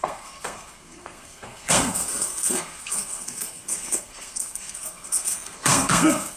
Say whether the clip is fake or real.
fake